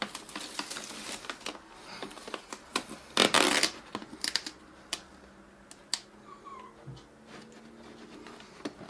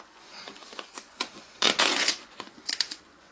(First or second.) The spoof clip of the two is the second